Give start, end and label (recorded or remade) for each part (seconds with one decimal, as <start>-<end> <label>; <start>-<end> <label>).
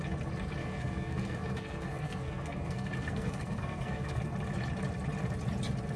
0.0-0.6 recorded; 0.6-4.2 remade; 4.2-6.0 recorded